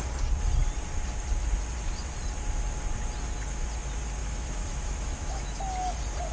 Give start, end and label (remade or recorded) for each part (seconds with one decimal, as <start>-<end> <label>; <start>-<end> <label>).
0.0-4.2 recorded; 4.2-5.6 remade; 5.6-6.3 recorded